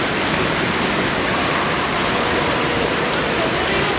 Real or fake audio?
real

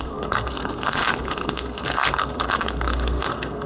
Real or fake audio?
fake